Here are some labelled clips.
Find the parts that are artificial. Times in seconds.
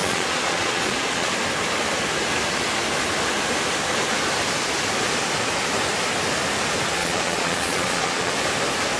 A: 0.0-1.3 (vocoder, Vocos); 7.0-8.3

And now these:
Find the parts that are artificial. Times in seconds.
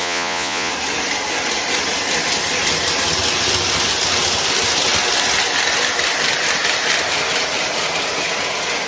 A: 0.0-0.7 (vocoder, Vocos)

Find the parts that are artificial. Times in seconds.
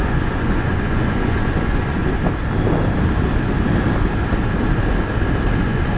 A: 0.0-2.0 (vocoder, Vocos); 5.6-6.0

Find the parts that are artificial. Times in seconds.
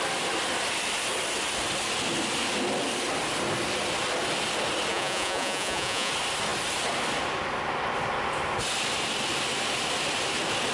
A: 4.9-6.1 (vocoder, Vocos)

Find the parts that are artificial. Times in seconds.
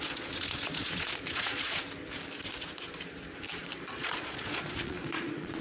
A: 0.0-1.8 (vocoder, Vocos); 3.6-5.6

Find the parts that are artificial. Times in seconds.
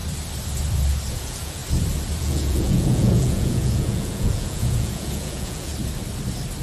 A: 1.1-1.6 (vocoder, Vocos); 2.2-5.7